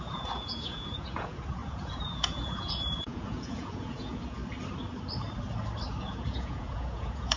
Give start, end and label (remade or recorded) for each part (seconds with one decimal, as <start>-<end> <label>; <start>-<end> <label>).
0.0-4.4 remade; 4.4-6.0 recorded; 6.0-7.4 remade